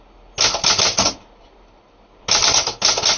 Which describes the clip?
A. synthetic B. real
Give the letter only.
B